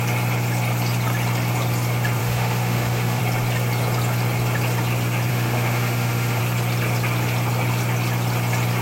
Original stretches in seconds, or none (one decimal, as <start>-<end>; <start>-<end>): 0.0-2.2; 3.2-5.3; 6.4-8.8